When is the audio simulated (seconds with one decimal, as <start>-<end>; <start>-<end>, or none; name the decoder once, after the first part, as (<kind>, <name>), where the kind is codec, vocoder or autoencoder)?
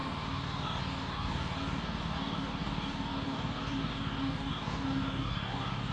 0.0-5.9 (codec, DAC)